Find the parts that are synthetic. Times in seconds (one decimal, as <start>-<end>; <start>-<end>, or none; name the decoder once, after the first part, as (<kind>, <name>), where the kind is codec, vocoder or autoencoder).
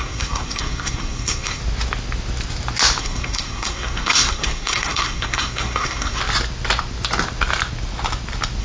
0.0-1.6 (codec, SNAC); 3.0-6.2